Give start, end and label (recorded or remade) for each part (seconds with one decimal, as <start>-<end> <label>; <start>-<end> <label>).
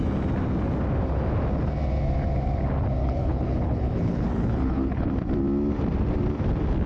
0.0-3.0 recorded; 3.0-5.1 remade; 5.1-6.9 recorded